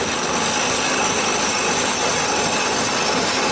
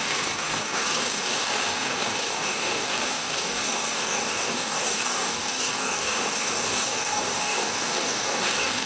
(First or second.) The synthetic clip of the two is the second